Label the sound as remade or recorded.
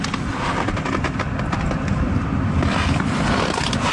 recorded